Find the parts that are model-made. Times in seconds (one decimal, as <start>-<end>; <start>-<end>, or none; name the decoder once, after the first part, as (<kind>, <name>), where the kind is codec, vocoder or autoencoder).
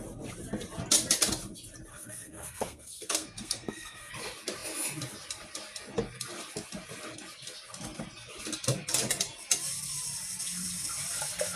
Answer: 1.9-4.1 (codec, SNAC)